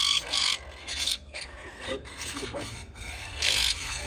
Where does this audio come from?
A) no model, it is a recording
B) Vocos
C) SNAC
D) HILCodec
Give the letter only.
C